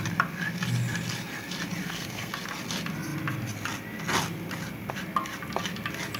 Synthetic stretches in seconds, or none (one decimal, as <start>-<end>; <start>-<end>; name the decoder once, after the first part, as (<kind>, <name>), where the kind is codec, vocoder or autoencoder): 1.8-2.3 (codec, SNAC)